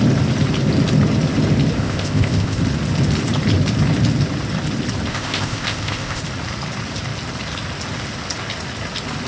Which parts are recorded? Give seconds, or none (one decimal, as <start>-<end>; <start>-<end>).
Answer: 0.0-1.8; 2.6-5.1; 6.2-9.3